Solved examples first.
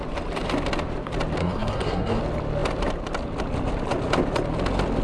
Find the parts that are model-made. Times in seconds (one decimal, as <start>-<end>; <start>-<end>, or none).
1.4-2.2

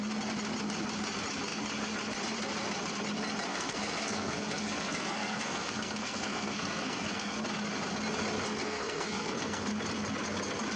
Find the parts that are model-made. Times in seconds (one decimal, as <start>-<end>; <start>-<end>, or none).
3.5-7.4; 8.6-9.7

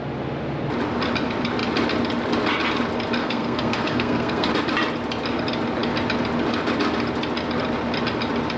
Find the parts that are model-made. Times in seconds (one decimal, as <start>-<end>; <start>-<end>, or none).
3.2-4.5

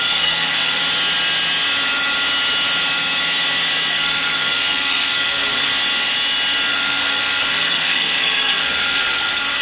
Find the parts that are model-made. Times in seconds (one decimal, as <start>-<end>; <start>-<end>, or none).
0.0-0.8; 3.9-5.7; 6.7-9.6

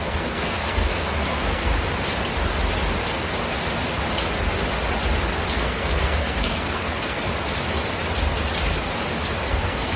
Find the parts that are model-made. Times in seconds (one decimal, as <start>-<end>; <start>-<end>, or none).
0.0-1.7; 5.5-7.3; 9.5-10.0